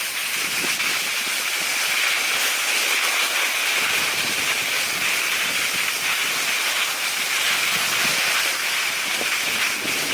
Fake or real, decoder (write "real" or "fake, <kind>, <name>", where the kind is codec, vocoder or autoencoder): real